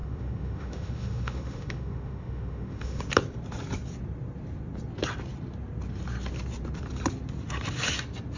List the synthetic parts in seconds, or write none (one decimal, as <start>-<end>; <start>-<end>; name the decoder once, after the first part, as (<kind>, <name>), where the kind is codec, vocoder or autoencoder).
0.0-3.0 (autoencoder, DAC-VAE)